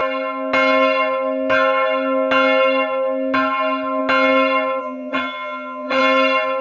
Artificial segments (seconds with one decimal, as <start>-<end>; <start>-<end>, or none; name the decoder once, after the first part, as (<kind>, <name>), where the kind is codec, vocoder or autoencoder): 4.8-6.0 (vocoder, HiFi-GAN)